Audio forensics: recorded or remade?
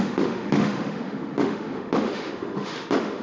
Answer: remade